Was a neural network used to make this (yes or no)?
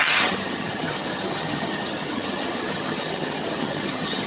yes